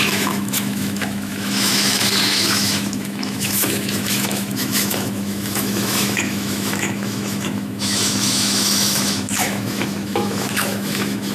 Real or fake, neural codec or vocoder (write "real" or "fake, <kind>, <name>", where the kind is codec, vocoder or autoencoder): fake, autoencoder, DAC-VAE